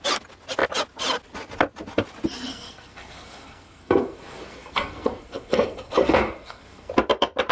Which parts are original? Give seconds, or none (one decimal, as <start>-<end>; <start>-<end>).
0.0-2.5; 6.9-7.5